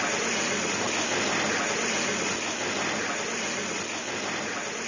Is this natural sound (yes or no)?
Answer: yes